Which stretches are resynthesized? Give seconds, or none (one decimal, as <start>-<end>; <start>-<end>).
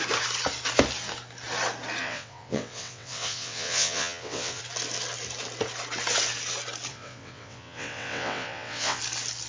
2.0-4.6; 6.9-9.0